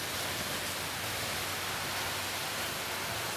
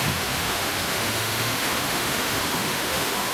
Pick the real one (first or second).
first